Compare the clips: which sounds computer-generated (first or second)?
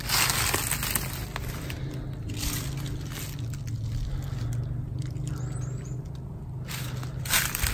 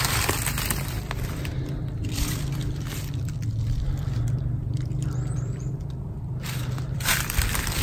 second